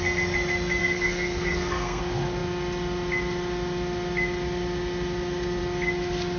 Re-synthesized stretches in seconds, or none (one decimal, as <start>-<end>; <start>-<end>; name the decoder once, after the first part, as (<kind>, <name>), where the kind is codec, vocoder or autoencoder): 0.8-2.0 (codec, SNAC)